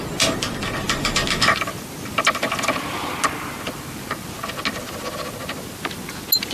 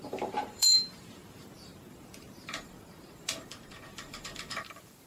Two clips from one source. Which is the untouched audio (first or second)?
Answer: first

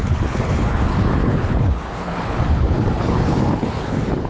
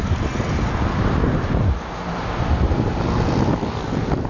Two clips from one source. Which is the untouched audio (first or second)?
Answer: second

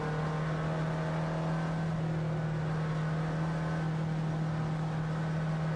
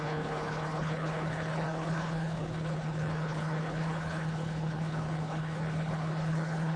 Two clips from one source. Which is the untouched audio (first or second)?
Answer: first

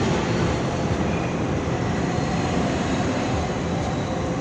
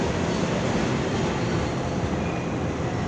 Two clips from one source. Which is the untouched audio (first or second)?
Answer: second